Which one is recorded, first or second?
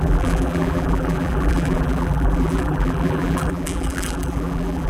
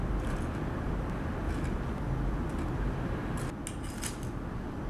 second